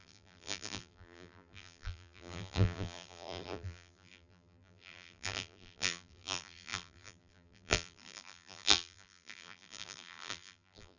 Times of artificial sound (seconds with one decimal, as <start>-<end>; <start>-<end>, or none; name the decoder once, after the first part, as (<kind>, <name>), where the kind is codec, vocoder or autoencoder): 0.0-11.0 (vocoder, BigVGAN v2)